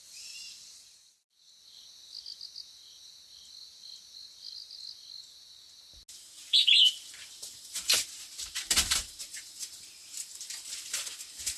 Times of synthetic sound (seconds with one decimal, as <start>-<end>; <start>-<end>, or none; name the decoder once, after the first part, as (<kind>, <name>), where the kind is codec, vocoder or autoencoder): 6.5-9.8 (vocoder, BigVGAN v2)